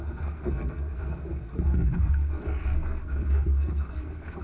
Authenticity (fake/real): fake